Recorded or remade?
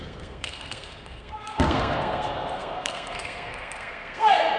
remade